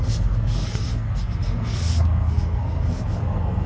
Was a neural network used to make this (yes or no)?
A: yes